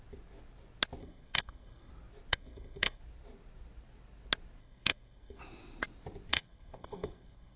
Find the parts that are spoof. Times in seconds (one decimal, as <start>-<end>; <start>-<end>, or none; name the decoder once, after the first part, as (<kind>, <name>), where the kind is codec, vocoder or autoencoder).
1.0-1.9 (codec, SNAC); 2.3-3.0; 4.6-5.4; 6.3-7.6